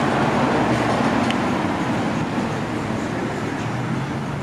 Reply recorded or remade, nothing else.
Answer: recorded